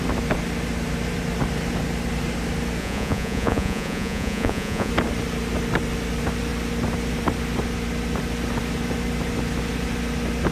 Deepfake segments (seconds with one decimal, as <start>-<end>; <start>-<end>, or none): 2.8-4.9